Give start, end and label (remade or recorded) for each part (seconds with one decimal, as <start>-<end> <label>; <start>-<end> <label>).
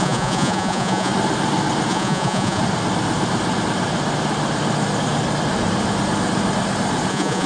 0.0-1.1 remade; 1.1-1.9 recorded; 1.9-2.6 remade; 2.6-7.1 recorded; 7.1-7.5 remade